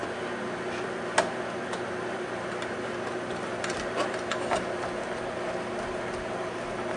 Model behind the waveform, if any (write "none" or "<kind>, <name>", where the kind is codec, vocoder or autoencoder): none